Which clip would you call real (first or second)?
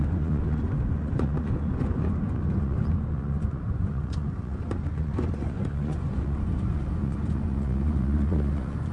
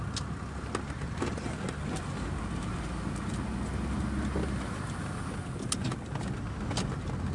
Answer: second